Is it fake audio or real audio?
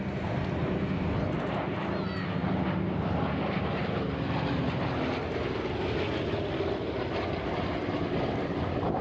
real